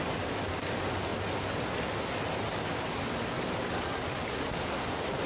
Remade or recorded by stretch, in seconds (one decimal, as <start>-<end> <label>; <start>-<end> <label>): 0.0-5.3 recorded